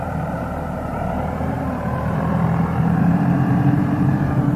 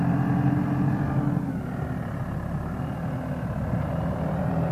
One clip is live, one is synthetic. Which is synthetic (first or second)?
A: first